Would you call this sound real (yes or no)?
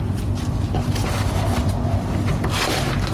yes